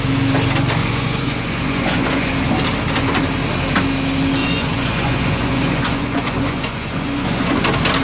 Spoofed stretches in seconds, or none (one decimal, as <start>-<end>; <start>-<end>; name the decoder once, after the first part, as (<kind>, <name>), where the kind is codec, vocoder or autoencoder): 0.8-2.3 (vocoder, Vocos); 4.4-7.6

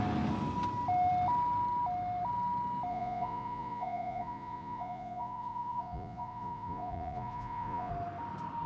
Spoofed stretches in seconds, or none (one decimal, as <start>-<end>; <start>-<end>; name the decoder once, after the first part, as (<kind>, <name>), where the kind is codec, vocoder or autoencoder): 2.9-7.9 (vocoder, Vocos)

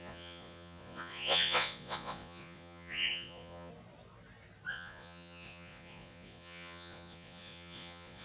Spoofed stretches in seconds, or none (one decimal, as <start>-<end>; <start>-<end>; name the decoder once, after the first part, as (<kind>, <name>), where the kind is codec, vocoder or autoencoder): 0.0-3.7 (vocoder, Vocos); 4.7-8.2